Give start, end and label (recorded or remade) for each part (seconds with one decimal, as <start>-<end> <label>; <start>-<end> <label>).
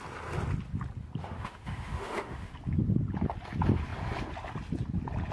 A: 0.0-1.2 recorded; 1.2-2.5 remade; 2.5-5.3 recorded